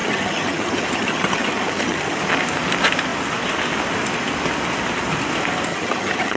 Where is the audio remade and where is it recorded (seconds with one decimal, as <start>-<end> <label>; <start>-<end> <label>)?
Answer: 0.0-2.3 remade; 2.3-5.7 recorded; 5.7-6.4 remade